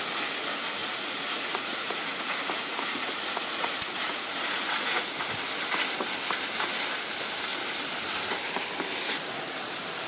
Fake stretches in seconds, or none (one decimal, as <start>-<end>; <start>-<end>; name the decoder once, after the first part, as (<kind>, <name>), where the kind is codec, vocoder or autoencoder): 0.8-5.0 (vocoder, Vocos)